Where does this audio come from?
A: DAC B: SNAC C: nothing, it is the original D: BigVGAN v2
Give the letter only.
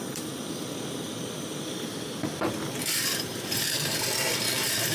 D